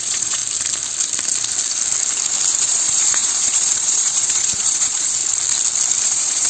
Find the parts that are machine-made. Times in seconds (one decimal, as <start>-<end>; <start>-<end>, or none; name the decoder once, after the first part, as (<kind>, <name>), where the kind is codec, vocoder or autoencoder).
0.0-0.4 (vocoder, Vocos); 2.6-5.2; 6.0-6.5